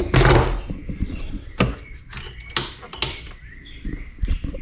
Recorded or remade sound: recorded